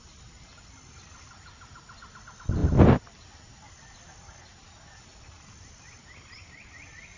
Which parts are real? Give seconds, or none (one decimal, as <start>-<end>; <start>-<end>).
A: none